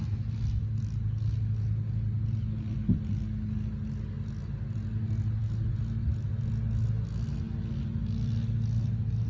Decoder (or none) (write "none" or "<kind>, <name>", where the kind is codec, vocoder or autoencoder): none